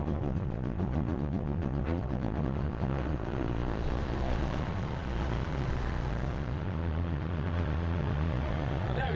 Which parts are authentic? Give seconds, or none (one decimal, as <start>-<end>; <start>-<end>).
none